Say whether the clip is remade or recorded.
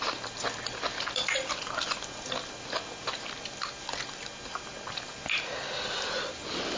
recorded